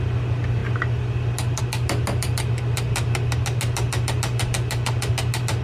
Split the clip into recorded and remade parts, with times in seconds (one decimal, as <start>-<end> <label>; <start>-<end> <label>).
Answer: 0.0-5.6 recorded